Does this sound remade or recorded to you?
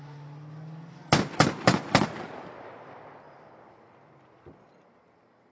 recorded